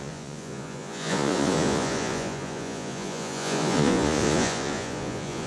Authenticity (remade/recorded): remade